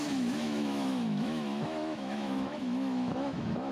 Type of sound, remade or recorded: remade